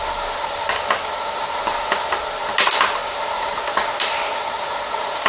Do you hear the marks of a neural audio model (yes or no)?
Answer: no